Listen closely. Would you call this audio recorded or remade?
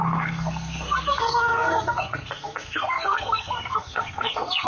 remade